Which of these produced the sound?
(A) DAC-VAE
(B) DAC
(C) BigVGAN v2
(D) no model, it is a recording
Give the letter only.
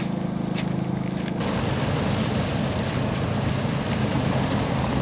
D